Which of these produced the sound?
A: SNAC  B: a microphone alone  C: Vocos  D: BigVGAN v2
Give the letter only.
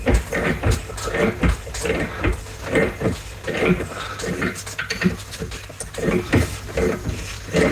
B